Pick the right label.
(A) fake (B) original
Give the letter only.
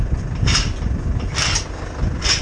B